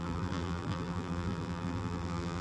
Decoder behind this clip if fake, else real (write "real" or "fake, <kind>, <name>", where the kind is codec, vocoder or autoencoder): fake, vocoder, BigVGAN v2